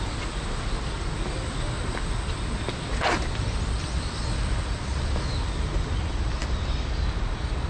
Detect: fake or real real